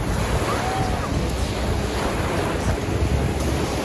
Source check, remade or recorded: recorded